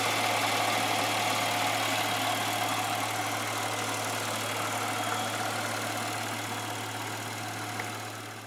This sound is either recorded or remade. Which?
recorded